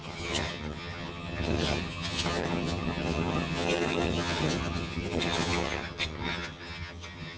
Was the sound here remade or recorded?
remade